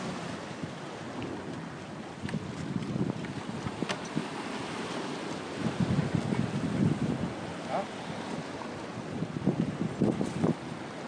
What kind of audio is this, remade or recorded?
recorded